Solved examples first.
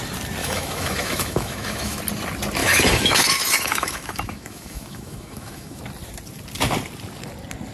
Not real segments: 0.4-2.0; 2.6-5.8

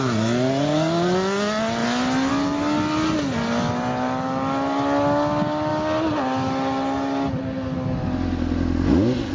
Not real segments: none

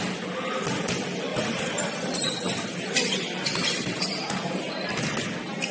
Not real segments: 1.3-4.7

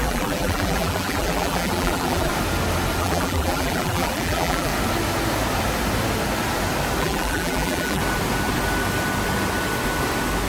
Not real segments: 0.0-2.3; 3.0-4.7; 7.0-8.0

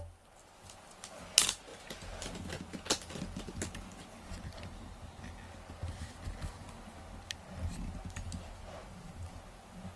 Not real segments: none